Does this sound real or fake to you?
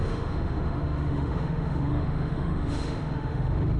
fake